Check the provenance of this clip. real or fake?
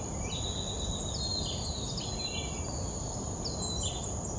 real